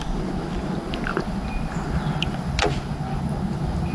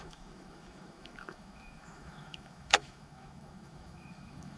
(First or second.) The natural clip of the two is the first